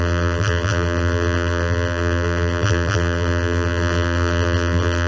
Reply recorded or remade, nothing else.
remade